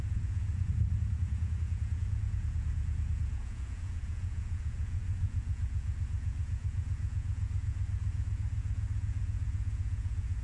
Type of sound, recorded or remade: remade